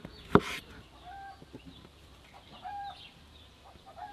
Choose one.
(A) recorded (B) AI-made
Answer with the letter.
B